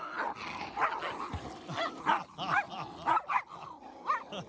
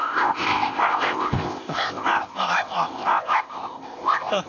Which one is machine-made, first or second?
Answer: second